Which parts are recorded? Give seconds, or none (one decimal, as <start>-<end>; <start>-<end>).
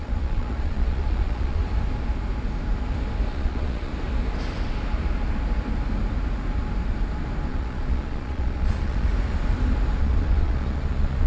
1.6-3.3; 3.9-7.5; 9.1-10.0